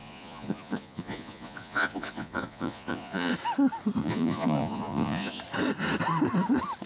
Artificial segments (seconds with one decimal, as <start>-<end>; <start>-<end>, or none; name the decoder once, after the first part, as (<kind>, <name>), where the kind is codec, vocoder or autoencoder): 0.0-3.3 (vocoder, Vocos); 4.0-5.4